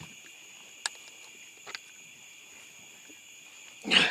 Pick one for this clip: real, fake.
real